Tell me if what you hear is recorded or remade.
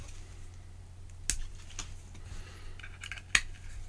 recorded